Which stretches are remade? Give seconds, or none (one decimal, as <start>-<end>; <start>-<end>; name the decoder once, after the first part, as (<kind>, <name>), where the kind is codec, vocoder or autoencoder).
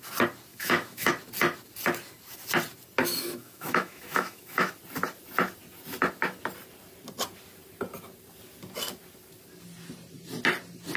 0.5-1.1 (autoencoder, DAC-VAE); 3.0-4.7